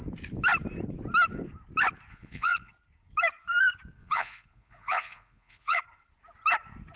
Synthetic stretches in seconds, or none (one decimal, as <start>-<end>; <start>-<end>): 2.1-2.7; 4.0-5.8